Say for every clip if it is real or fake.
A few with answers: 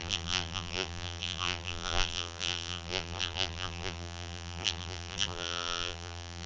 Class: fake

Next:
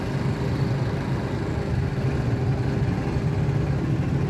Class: real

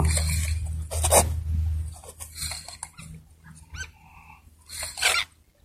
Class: real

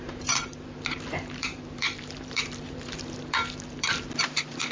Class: fake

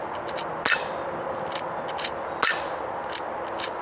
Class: real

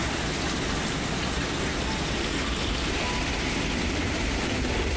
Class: real